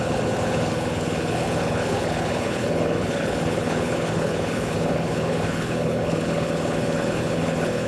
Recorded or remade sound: remade